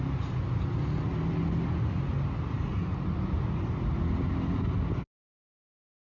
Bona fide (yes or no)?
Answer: yes